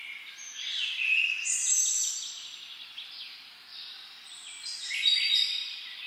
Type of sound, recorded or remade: remade